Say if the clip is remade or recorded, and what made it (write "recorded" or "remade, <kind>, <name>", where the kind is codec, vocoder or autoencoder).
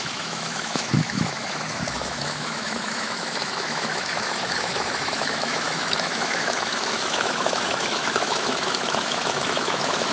remade, autoencoder, DAC-VAE